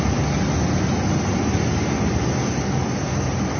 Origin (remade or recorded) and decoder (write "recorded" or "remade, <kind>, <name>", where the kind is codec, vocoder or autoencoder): recorded